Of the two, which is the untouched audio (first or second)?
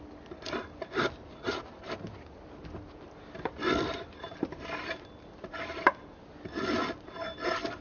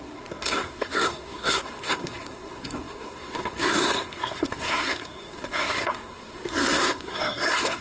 first